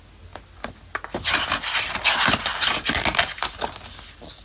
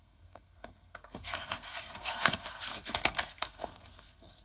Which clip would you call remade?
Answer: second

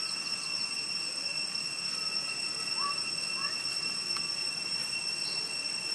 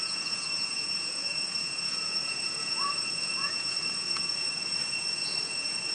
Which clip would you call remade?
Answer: second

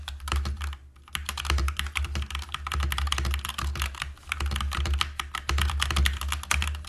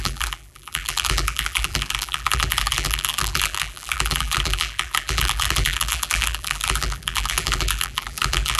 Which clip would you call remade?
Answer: second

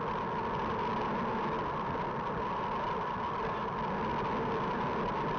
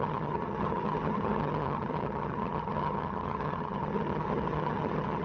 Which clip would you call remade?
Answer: second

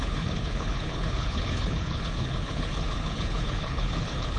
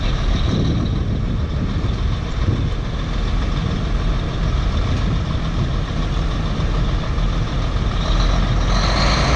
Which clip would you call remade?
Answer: first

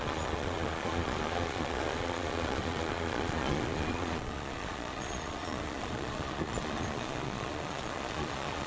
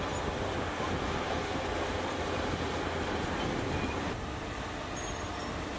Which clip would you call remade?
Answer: first